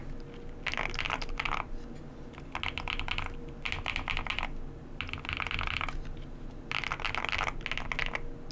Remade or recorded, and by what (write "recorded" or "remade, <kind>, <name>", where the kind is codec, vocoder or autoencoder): recorded